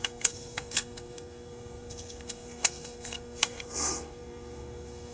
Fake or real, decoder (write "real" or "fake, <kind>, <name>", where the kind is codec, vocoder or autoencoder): fake, codec, SNAC